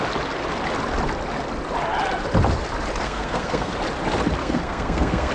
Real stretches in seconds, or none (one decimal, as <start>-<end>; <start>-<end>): 0.0-3.0; 3.7-4.4